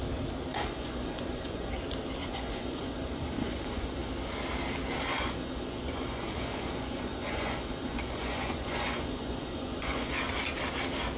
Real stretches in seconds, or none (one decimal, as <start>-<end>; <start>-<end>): 0.0-0.5; 1.7-2.2; 4.1-5.1; 10.1-11.2